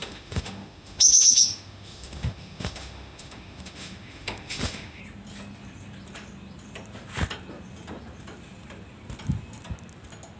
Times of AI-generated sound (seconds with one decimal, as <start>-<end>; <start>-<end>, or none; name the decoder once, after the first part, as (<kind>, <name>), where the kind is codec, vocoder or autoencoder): 0.0-5.0 (autoencoder, DAC-VAE)